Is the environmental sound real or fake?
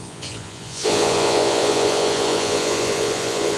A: fake